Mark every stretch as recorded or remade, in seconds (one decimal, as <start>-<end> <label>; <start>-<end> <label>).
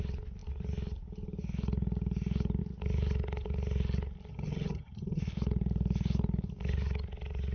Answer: 0.0-4.3 recorded; 4.3-5.2 remade; 5.2-7.5 recorded